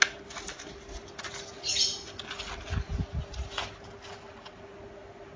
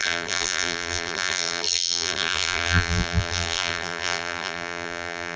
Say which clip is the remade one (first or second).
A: second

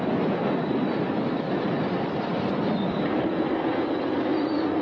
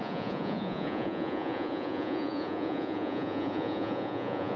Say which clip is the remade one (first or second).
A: second